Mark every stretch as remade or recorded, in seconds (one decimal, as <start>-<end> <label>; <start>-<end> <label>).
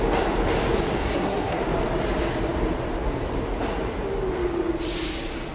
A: 0.0-1.0 recorded; 1.0-1.6 remade; 1.6-5.5 recorded